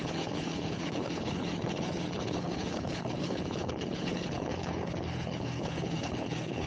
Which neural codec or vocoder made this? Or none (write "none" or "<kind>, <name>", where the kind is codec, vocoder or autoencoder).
codec, HILCodec